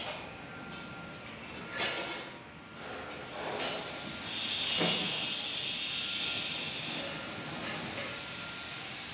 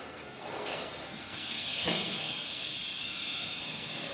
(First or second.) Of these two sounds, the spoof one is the second